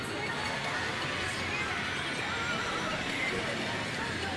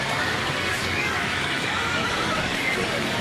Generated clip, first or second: second